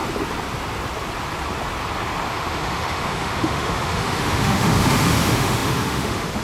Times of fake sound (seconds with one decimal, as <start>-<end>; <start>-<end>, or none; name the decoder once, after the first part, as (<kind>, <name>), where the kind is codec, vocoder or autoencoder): 2.3-6.4 (autoencoder, DAC-VAE)